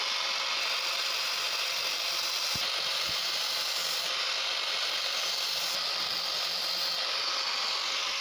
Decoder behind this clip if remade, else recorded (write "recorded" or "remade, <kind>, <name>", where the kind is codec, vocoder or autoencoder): recorded